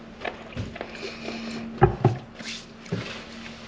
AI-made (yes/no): no